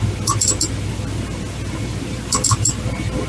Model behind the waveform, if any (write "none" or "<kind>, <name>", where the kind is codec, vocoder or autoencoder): none